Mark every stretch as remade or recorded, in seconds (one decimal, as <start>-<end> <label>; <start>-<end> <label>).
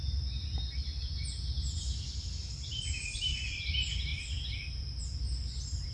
0.0-5.9 recorded